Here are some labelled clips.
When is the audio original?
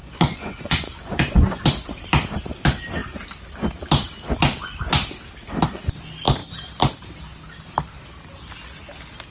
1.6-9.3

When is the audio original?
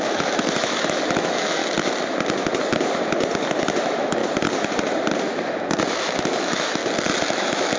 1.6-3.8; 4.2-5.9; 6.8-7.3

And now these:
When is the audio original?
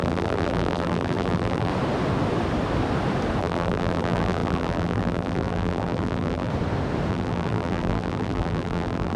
1.7-3.4; 6.5-7.1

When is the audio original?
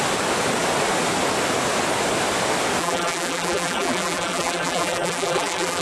0.0-2.8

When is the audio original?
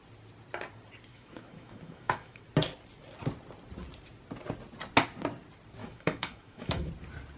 0.0-1.1; 2.4-5.8; 6.9-7.4